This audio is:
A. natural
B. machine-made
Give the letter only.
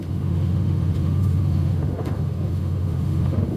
B